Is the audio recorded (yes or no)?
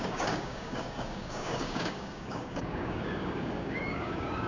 no